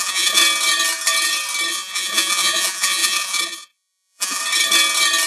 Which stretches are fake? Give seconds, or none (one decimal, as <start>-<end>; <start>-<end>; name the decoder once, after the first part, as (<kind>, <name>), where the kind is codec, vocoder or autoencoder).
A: 0.0-0.4 (vocoder, Vocos); 1.7-4.4